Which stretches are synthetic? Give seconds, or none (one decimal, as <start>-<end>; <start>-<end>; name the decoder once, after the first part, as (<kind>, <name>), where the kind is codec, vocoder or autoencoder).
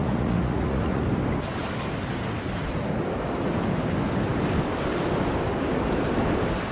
0.0-1.0 (vocoder, Vocos)